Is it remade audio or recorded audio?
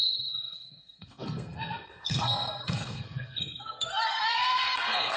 remade